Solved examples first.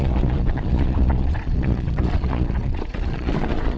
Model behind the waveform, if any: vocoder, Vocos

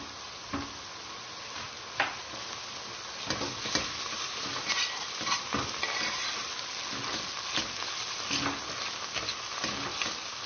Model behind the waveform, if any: none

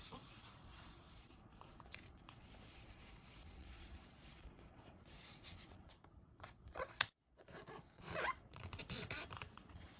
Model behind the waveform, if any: vocoder, Vocos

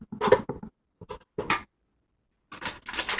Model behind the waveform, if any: none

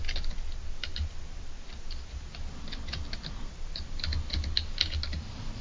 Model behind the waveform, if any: none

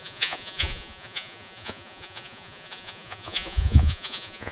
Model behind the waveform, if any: vocoder, Vocos